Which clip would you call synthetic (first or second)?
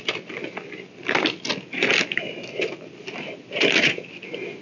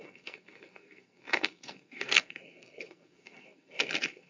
second